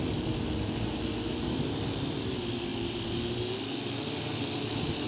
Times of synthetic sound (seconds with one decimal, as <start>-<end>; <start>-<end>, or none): none